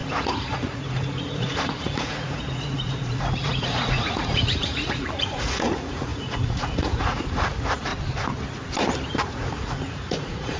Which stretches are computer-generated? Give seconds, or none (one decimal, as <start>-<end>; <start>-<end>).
0.0-7.9; 9.1-10.6